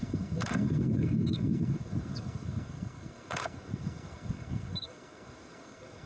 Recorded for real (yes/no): no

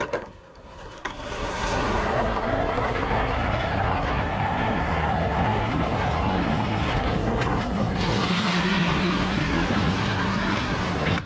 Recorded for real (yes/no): no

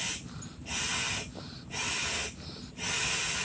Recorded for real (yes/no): yes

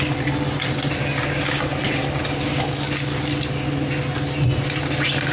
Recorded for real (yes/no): yes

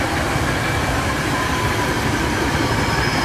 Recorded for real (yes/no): yes